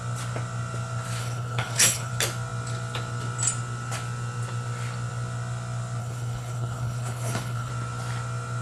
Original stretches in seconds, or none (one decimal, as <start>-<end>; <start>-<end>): 0.0-1.2; 2.1-6.0; 7.7-8.6